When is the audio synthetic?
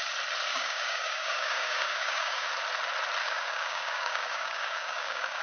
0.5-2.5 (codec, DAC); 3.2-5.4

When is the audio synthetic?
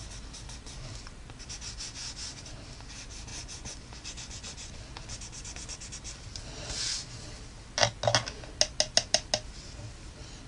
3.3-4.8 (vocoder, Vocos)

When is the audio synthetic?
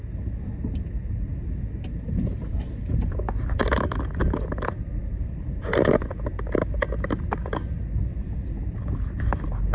3.6-5.6 (vocoder, BigVGAN v2)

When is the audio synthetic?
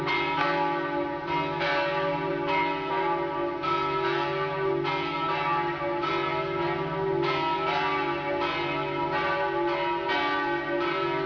none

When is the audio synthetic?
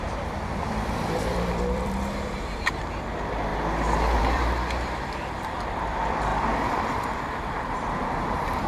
0.0-3.5 (vocoder, BigVGAN v2); 4.2-8.7